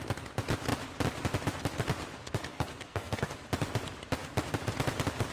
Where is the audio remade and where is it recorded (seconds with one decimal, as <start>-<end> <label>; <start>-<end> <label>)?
0.0-2.5 recorded; 2.5-3.3 remade; 3.3-5.3 recorded